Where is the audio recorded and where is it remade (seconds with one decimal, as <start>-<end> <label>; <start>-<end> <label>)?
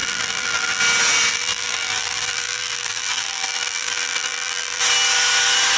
0.0-0.8 remade; 0.8-1.3 recorded; 1.3-4.8 remade; 4.8-5.8 recorded